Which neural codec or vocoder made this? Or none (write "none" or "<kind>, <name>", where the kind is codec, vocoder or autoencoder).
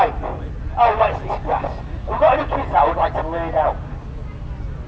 none